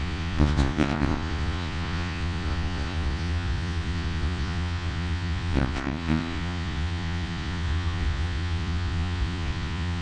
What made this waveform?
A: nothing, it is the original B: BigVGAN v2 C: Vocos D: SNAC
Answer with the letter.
C